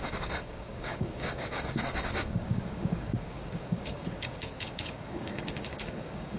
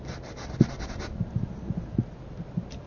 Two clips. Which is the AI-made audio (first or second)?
first